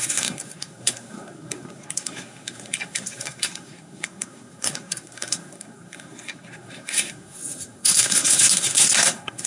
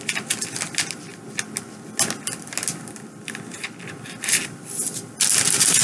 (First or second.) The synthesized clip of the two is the first